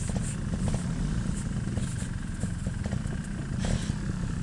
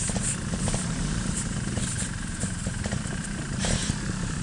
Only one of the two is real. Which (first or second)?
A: first